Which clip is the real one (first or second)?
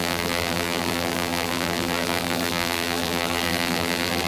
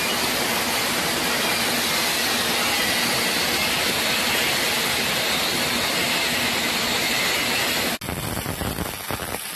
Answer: second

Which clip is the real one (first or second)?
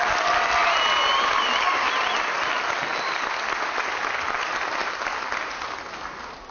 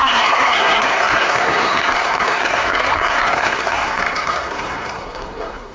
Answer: first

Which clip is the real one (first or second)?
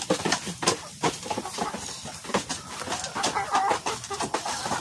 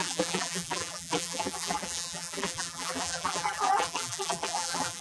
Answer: first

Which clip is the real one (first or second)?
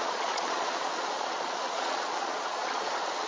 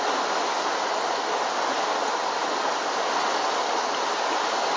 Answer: second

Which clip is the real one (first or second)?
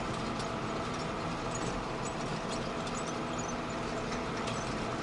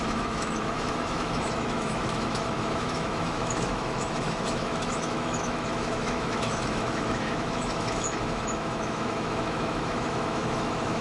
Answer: first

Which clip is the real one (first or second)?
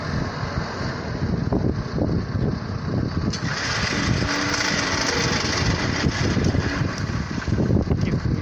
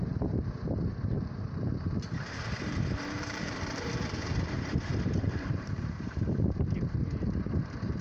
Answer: first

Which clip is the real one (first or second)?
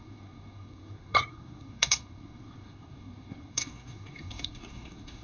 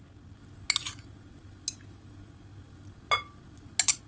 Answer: second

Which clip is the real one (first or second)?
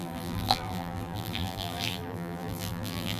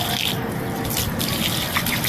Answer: second